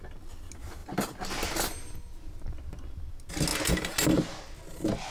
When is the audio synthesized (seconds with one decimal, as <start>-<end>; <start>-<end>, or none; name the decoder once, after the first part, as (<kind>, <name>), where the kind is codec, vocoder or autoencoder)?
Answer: none